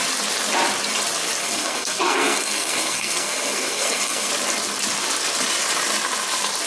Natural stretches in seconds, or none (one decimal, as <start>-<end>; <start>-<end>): 0.0-1.4; 4.3-6.7